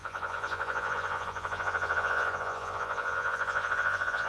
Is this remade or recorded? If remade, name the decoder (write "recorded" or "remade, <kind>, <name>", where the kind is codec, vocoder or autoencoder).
remade, vocoder, Vocos